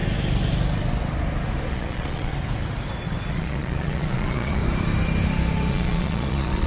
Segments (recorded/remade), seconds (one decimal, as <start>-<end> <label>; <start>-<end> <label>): 0.0-1.7 recorded; 1.7-2.3 remade; 2.3-3.3 recorded; 3.3-4.6 remade; 4.6-5.7 recorded; 5.7-6.7 remade